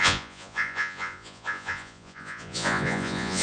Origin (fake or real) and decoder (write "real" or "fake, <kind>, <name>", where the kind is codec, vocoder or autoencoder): fake, vocoder, Vocos